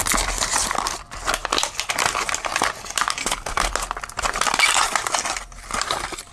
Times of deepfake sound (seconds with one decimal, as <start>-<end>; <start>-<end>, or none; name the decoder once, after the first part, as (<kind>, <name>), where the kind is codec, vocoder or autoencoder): 3.2-3.7 (codec, SNAC)